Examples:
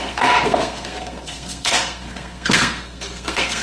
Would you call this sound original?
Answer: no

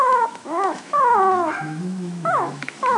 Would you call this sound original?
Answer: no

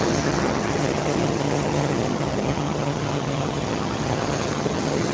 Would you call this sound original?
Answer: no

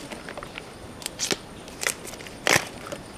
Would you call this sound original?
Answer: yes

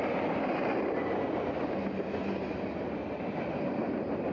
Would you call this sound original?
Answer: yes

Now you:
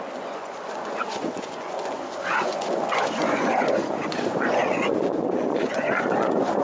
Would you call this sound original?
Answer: no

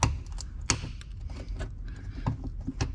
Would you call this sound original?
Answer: yes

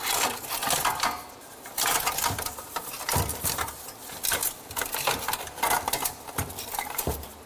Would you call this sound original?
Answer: yes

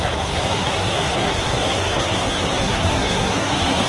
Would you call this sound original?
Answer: no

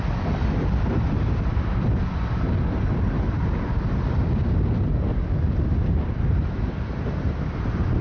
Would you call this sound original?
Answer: yes